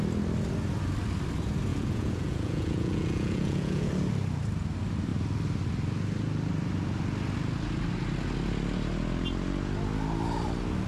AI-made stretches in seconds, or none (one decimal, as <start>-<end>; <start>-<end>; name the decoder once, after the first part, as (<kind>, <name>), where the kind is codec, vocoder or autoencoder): 1.7-3.9 (vocoder, Vocos)